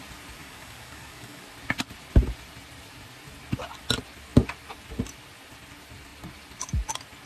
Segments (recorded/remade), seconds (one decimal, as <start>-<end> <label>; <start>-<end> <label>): 0.0-0.4 recorded; 0.4-1.4 remade; 1.4-7.3 recorded